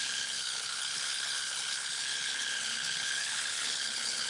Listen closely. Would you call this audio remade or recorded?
remade